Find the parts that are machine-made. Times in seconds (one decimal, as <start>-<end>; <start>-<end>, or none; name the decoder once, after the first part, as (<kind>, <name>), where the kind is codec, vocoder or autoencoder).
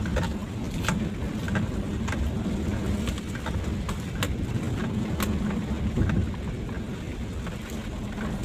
none